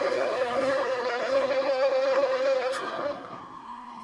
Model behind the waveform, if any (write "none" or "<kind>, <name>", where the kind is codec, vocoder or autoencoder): codec, SNAC